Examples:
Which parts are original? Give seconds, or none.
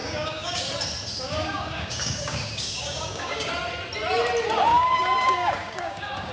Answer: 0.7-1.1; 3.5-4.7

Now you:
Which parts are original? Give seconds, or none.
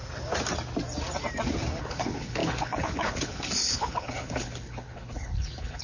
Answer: 0.0-1.8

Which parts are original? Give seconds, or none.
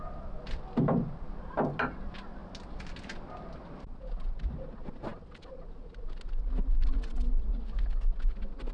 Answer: 0.0-8.7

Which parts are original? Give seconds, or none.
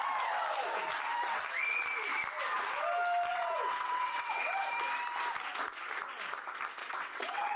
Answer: 0.0-3.3; 4.6-6.8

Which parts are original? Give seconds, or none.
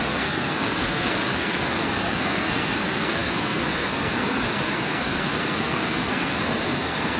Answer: none